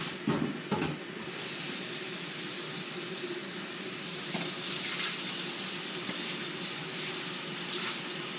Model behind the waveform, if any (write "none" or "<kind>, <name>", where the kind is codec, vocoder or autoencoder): none